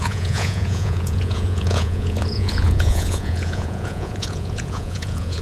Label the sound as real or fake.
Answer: fake